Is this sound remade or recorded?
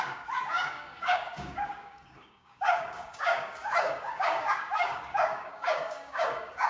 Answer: remade